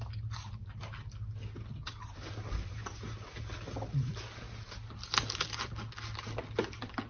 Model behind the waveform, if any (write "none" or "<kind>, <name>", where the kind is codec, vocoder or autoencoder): none